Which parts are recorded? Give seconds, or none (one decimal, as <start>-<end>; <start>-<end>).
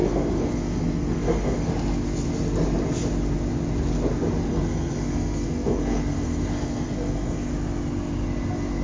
1.7-4.5; 7.5-8.8